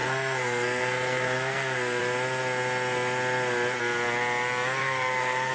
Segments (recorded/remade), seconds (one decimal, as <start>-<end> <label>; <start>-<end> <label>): 0.0-2.0 remade; 2.0-4.8 recorded; 4.8-5.5 remade